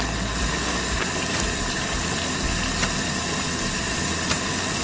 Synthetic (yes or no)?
no